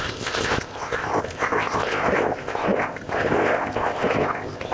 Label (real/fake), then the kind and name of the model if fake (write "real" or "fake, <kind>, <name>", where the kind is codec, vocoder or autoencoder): fake, codec, ZipCodec